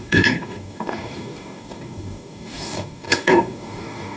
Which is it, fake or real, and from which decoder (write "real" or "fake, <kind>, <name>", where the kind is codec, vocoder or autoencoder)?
fake, codec, DAC